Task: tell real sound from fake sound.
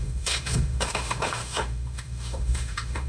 fake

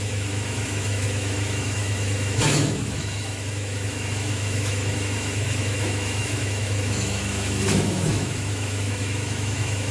fake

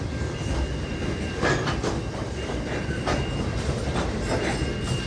real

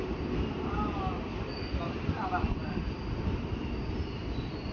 real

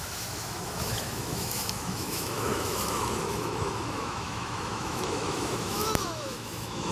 fake